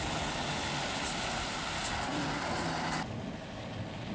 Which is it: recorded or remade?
recorded